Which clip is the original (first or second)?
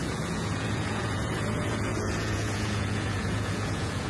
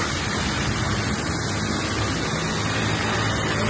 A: second